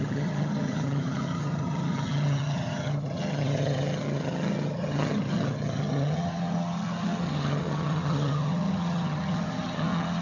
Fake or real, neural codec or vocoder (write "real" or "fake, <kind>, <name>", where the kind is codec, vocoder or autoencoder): fake, vocoder, HiFi-GAN